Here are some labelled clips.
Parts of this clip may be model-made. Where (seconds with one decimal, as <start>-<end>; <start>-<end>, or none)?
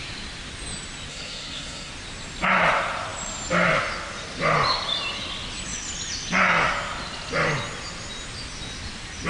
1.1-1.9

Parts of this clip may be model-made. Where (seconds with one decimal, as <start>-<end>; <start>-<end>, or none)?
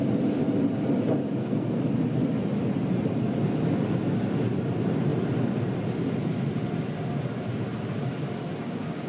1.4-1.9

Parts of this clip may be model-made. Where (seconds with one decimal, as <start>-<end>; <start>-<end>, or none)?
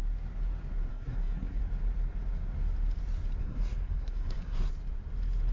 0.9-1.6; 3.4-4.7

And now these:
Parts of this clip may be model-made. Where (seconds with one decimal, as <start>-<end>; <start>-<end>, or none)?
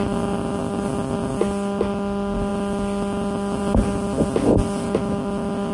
none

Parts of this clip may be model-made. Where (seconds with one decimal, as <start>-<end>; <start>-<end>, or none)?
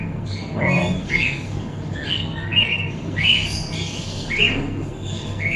0.0-5.6